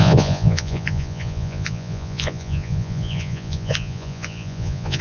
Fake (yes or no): yes